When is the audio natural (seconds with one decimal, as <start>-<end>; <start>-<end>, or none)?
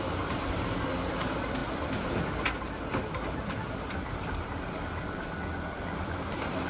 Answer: none